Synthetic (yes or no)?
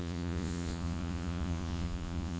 yes